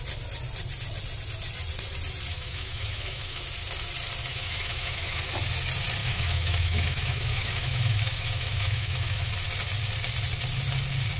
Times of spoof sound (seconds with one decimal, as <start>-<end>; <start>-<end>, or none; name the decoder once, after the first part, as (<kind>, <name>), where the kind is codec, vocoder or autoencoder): 2.3-3.4 (autoencoder, DAC-VAE); 4.3-5.2; 6.0-9.3